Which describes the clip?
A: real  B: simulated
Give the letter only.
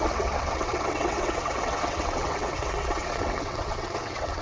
B